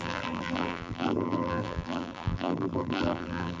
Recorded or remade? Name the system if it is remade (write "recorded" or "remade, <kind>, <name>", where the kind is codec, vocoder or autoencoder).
remade, vocoder, BigVGAN v2